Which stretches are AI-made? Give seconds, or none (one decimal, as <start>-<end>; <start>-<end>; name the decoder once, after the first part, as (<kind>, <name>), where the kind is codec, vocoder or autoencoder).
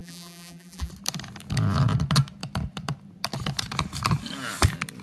0.0-0.9 (vocoder, BigVGAN v2)